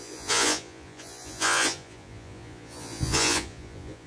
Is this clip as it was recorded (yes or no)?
no